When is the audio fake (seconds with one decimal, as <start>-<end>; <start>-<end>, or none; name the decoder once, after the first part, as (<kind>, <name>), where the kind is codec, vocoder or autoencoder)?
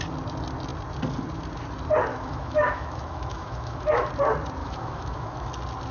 2.1-4.1 (autoencoder, DAC-VAE); 4.6-5.5